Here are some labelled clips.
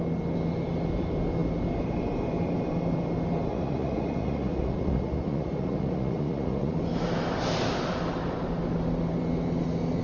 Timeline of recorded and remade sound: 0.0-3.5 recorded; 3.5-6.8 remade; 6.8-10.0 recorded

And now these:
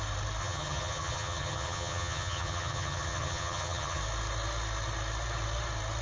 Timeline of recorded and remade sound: 0.0-0.4 recorded; 0.4-4.0 remade; 4.0-6.0 recorded

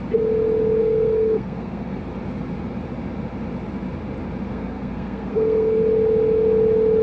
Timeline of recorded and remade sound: 0.0-0.8 recorded; 0.8-2.0 remade; 2.0-4.5 recorded; 4.5-5.8 remade; 5.8-7.0 recorded

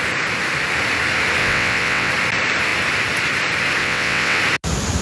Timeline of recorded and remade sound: 0.0-1.4 recorded; 1.4-2.1 remade; 2.1-3.8 recorded; 3.8-4.4 remade; 4.4-5.0 recorded